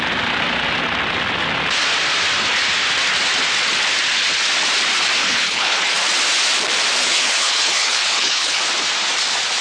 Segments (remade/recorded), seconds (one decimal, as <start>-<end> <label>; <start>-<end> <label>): 0.0-5.2 recorded; 5.2-5.9 remade; 5.9-7.0 recorded; 7.0-8.6 remade; 8.6-9.6 recorded